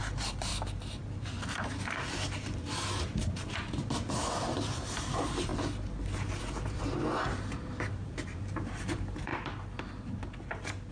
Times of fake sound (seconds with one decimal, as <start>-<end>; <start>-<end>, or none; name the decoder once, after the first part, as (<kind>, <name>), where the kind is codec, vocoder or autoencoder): 0.0-0.5 (vocoder, BigVGAN v2); 3.1-5.5; 6.4-9.3